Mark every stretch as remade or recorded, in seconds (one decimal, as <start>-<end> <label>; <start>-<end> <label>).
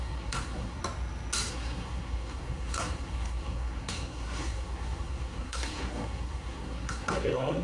0.0-0.8 remade; 0.8-1.5 recorded; 1.5-7.6 remade